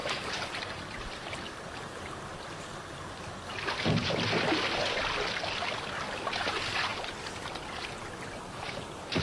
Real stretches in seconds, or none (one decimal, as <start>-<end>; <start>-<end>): 2.2-9.2